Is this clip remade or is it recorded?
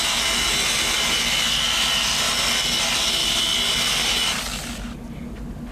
recorded